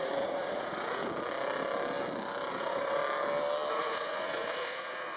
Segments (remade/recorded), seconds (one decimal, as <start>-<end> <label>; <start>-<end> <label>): 0.0-1.0 remade; 1.0-2.5 recorded; 2.5-3.0 remade; 3.0-3.7 recorded; 3.7-5.2 remade